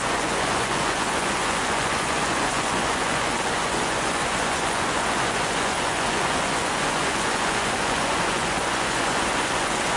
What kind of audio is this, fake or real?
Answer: fake